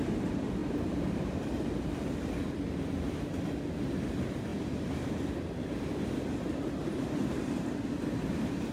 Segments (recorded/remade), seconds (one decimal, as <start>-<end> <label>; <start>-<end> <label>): 0.0-0.6 recorded; 0.6-2.8 remade; 2.8-4.5 recorded; 4.5-5.3 remade; 5.3-8.7 recorded